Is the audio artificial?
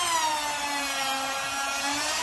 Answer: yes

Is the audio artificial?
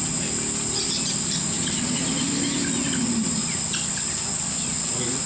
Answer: no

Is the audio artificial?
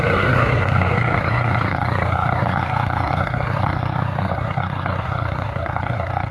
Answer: yes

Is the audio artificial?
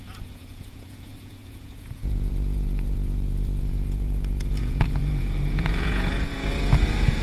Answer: yes